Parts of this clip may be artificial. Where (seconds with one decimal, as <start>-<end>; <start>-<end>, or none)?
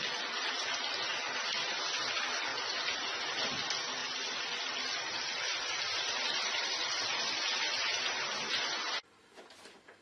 4.0-8.1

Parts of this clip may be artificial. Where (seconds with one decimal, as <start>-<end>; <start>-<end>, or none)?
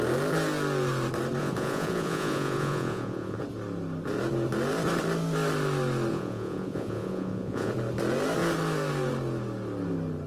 1.4-3.4; 6.1-7.7